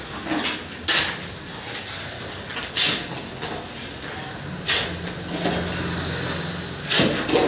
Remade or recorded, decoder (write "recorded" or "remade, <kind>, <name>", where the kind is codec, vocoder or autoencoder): recorded